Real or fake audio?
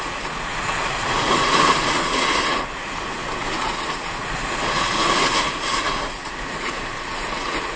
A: fake